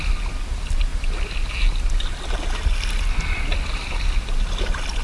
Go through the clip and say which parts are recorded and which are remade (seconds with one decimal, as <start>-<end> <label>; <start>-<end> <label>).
0.0-5.0 recorded